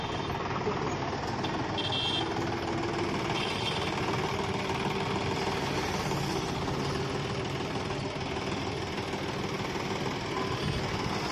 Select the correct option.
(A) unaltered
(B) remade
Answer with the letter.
A